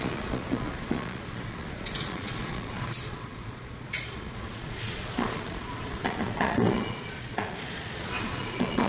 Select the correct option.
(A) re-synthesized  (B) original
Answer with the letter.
A